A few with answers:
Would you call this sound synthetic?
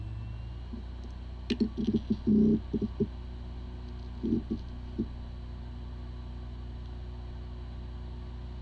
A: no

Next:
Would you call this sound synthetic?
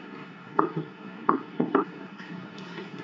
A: yes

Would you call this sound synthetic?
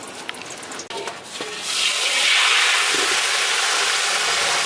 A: no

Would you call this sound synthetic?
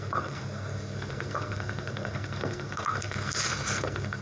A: yes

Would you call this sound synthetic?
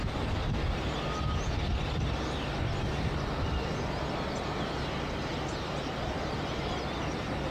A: no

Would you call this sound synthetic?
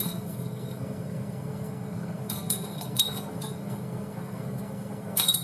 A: yes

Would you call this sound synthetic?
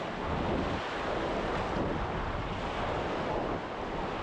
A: no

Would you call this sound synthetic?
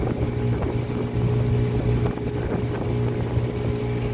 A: no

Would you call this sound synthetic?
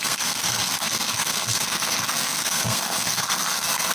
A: yes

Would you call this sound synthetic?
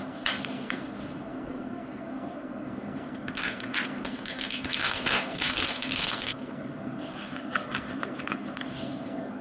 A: yes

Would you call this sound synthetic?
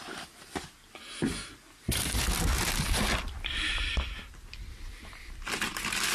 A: no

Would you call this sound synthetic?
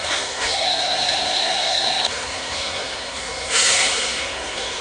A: yes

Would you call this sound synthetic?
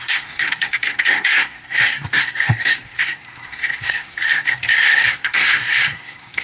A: yes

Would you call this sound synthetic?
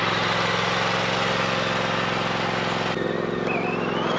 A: no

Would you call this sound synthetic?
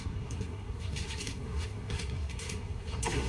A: yes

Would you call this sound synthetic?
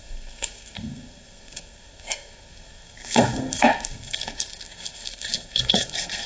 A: yes